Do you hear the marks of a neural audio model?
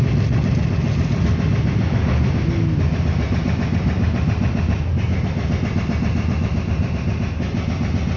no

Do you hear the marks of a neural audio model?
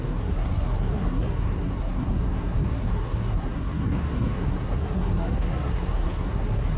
yes